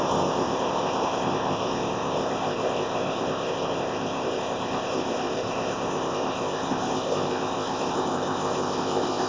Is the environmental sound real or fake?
fake